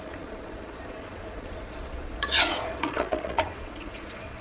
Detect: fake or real fake